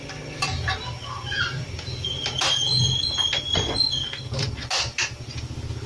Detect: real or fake real